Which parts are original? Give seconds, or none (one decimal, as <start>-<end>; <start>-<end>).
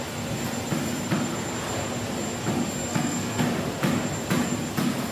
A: 0.0-2.9; 3.4-5.1